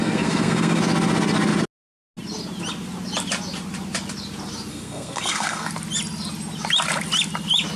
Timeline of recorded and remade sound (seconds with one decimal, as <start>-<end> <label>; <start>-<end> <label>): 0.0-0.8 remade; 0.8-4.7 recorded; 4.7-5.7 remade; 5.7-7.8 recorded